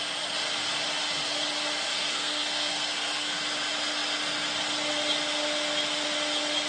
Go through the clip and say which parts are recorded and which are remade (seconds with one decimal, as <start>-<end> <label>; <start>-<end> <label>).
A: 0.0-1.9 recorded; 1.9-3.4 remade; 3.4-6.7 recorded